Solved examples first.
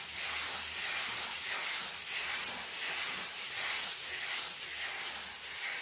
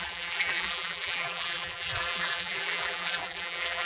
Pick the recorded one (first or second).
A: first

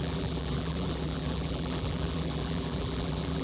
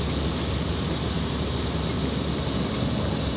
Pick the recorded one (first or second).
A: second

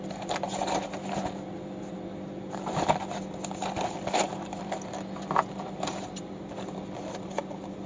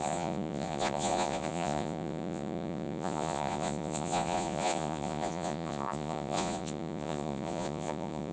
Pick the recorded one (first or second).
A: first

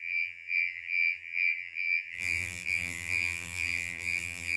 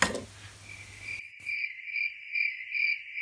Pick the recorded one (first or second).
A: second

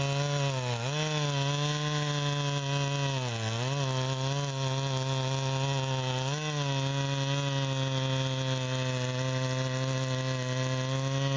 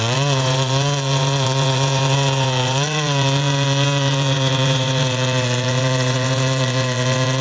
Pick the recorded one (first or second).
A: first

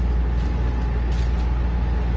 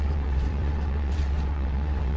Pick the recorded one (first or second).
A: first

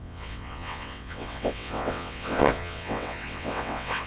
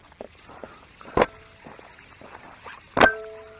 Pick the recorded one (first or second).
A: second